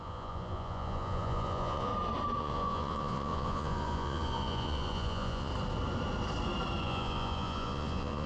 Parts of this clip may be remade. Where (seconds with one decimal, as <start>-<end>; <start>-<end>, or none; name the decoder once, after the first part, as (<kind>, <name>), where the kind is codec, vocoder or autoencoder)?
0.0-1.9 (vocoder, Vocos); 2.4-5.5; 6.8-8.3